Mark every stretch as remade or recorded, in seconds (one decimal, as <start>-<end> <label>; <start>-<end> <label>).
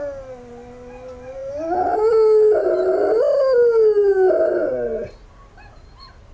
0.0-6.3 recorded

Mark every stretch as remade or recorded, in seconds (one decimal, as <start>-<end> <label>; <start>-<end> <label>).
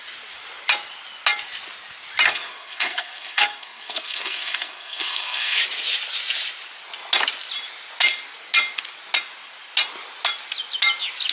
0.0-2.3 recorded; 2.3-5.6 remade; 5.6-11.3 recorded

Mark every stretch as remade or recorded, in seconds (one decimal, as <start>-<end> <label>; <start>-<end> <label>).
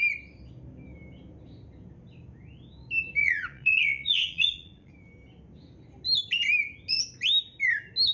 0.0-3.2 recorded; 3.2-4.9 remade; 4.9-8.1 recorded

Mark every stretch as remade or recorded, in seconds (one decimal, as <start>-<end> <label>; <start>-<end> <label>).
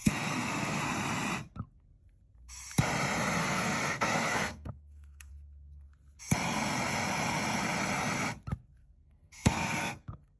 0.0-0.8 remade; 0.8-3.4 recorded; 3.4-5.3 remade; 5.3-8.8 recorded; 8.8-10.4 remade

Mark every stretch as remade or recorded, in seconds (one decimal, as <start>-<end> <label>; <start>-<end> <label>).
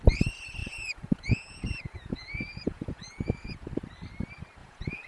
0.0-0.6 recorded; 0.6-3.7 remade; 3.7-4.6 recorded; 4.6-5.1 remade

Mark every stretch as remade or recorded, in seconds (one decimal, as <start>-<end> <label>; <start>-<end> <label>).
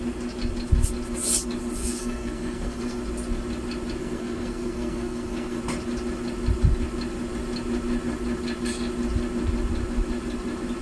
0.0-1.8 recorded; 1.8-3.0 remade; 3.0-4.0 recorded; 4.0-5.6 remade; 5.6-10.8 recorded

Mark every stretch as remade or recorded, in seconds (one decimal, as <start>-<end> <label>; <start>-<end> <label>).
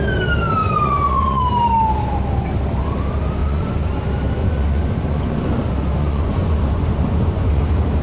0.0-0.6 recorded; 0.6-1.4 remade; 1.4-3.4 recorded; 3.4-4.0 remade; 4.0-4.4 recorded; 4.4-5.5 remade; 5.5-6.0 recorded; 6.0-7.6 remade; 7.6-8.0 recorded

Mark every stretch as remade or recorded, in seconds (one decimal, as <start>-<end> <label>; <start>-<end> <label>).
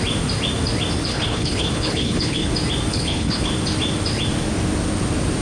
0.0-1.1 recorded; 1.1-2.5 remade; 2.5-2.9 recorded; 2.9-3.5 remade; 3.5-5.4 recorded